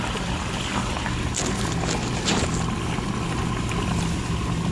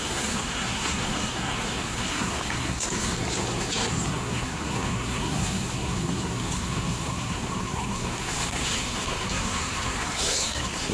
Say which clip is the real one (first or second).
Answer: first